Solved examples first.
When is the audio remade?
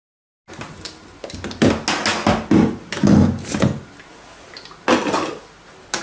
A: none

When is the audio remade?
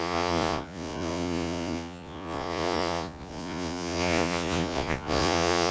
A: 0.0-5.7 (vocoder, Vocos)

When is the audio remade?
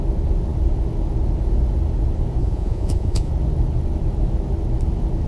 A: 2.4-3.3 (vocoder, Vocos)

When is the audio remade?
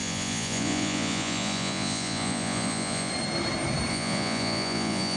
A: 0.0-3.1 (vocoder, Vocos); 3.9-5.2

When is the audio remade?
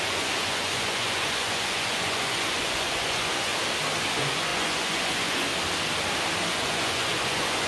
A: 0.0-3.5 (vocoder, Vocos); 4.1-5.5; 6.5-7.7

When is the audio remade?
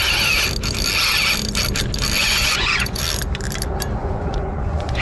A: 2.2-3.0 (vocoder, Vocos); 4.0-5.0